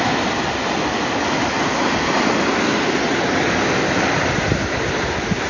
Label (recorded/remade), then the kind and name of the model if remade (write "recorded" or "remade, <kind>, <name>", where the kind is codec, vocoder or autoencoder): recorded